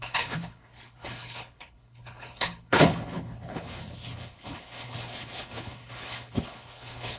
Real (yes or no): no